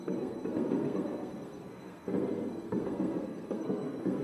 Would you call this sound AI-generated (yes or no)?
yes